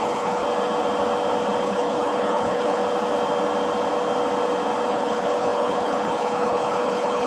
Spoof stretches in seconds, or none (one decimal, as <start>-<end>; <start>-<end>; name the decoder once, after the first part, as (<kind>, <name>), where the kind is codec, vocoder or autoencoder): 0.0-0.4 (codec, HILCodec); 1.6-2.8; 4.9-7.3